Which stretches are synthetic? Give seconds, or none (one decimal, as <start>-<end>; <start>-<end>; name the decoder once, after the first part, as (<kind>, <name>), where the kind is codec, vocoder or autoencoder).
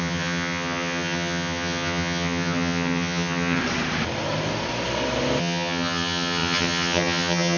0.0-3.6 (vocoder, HiFi-GAN); 5.4-7.6